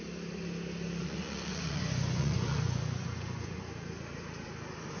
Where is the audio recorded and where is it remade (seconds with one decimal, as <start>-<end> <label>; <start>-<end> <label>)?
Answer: 0.0-1.0 recorded; 1.0-3.6 remade; 3.6-5.0 recorded